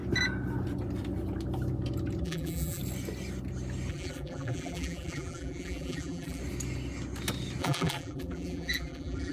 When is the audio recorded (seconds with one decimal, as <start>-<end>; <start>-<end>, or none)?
0.0-2.2; 2.8-3.9; 6.4-7.6